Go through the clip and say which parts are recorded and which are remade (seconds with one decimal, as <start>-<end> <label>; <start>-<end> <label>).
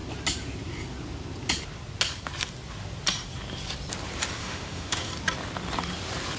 0.0-4.4 recorded; 4.4-5.1 remade; 5.1-6.4 recorded